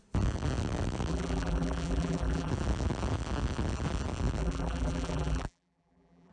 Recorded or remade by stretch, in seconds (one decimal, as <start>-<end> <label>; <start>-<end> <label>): 0.0-1.1 recorded; 1.1-2.5 remade; 2.5-4.4 recorded; 4.4-6.3 remade

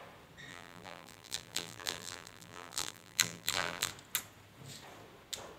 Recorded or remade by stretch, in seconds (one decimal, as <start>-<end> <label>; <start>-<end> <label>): 0.0-0.5 recorded; 0.5-3.9 remade; 3.9-5.6 recorded

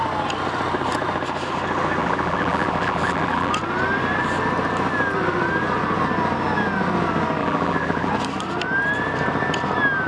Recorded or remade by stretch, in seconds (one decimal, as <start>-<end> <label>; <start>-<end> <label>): 0.0-2.0 recorded; 2.0-3.5 remade; 3.5-7.4 recorded; 7.4-8.1 remade; 8.1-10.1 recorded

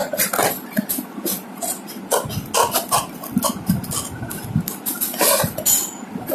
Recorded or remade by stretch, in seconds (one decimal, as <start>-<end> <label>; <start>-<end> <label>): 0.0-6.3 recorded